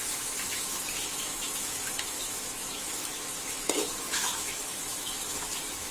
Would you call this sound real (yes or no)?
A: no